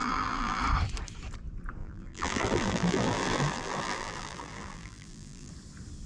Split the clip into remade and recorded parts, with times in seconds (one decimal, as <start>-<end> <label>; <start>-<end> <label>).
0.0-0.6 remade; 0.6-1.8 recorded; 1.8-5.5 remade; 5.5-6.1 recorded